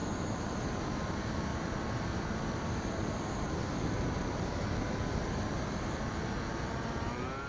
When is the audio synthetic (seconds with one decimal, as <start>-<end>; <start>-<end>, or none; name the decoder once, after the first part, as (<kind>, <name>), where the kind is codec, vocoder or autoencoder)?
1.5-6.0 (vocoder, BigVGAN v2)